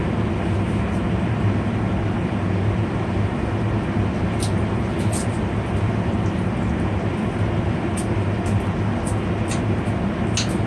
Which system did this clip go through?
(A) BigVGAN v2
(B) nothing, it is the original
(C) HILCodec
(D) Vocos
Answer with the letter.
B